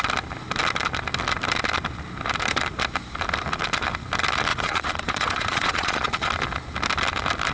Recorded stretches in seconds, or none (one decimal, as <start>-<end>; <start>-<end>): 0.0-4.5; 6.3-7.5